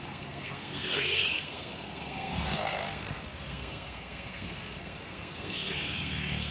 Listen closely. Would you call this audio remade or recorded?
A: remade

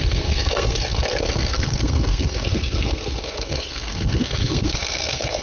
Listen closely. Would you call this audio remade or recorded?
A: remade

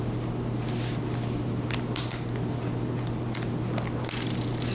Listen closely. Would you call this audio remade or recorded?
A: recorded